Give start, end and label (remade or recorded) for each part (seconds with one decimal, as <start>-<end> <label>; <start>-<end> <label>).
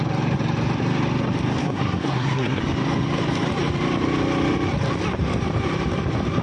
0.0-1.6 recorded; 1.6-2.6 remade; 2.6-6.4 recorded